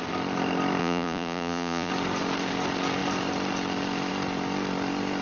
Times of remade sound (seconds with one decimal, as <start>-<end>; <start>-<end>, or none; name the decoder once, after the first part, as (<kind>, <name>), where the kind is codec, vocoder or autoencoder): 0.8-1.9 (vocoder, Vocos)